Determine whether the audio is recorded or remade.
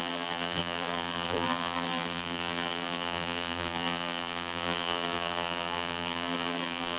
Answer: remade